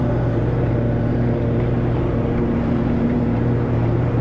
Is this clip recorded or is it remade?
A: remade